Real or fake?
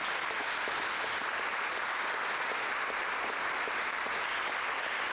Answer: real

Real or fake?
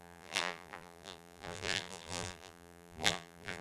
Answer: fake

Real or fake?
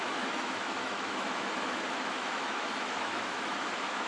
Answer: fake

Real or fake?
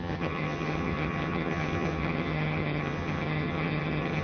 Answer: fake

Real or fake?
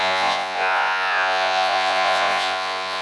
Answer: fake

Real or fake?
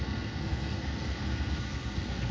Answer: fake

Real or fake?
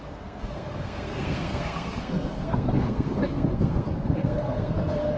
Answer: fake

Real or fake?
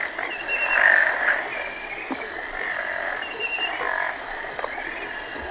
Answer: real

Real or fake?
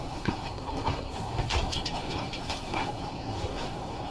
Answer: fake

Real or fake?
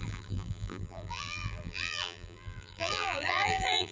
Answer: fake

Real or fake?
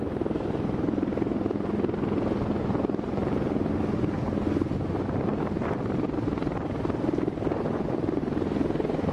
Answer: real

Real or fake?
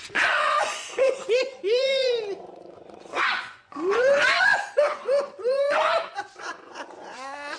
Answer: fake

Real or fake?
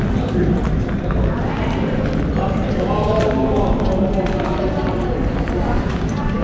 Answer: real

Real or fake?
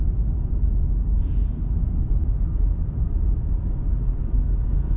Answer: real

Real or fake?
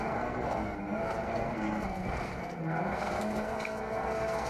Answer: fake